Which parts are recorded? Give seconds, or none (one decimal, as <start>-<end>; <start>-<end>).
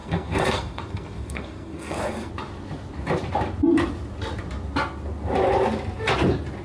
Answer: 2.3-6.6